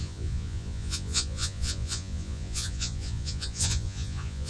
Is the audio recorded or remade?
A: remade